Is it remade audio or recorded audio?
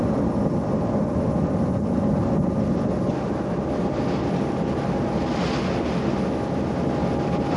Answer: recorded